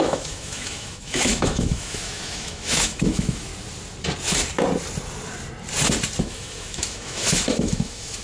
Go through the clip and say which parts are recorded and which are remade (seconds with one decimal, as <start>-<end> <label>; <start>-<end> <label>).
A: 0.0-3.5 remade; 3.5-6.2 recorded; 6.2-8.2 remade